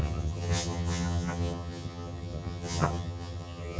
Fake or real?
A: fake